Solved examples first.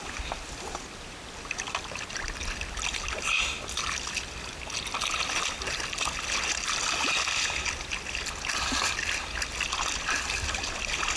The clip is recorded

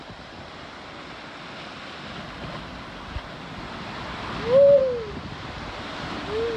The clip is recorded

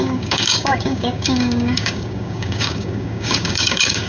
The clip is remade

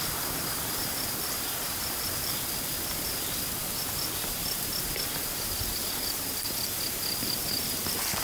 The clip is remade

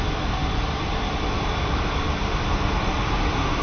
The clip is recorded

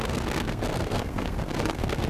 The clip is remade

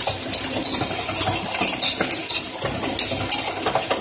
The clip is recorded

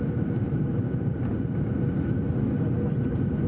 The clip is recorded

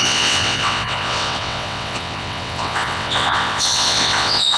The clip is remade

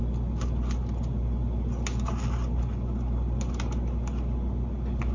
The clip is recorded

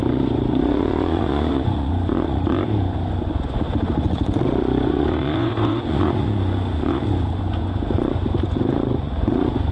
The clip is remade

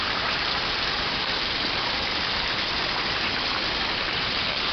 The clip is recorded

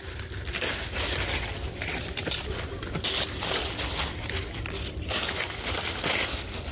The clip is recorded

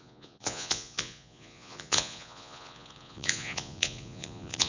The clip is remade